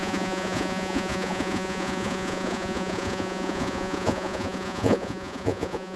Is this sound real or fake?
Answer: fake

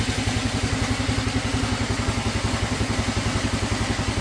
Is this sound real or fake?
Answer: real